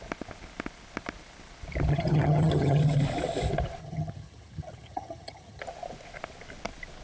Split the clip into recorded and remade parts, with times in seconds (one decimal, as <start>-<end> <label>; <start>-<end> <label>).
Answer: 0.0-1.9 recorded; 1.9-2.8 remade; 2.8-3.8 recorded; 3.8-5.6 remade; 5.6-7.0 recorded